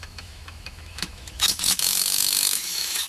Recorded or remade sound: remade